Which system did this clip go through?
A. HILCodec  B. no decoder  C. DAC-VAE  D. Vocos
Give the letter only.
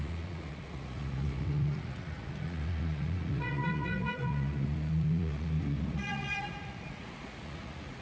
D